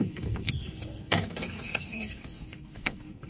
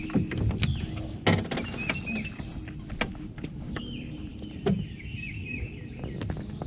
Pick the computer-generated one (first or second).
first